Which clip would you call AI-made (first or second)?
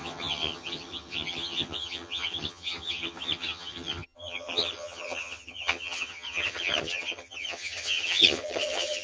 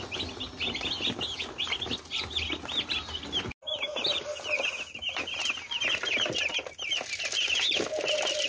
first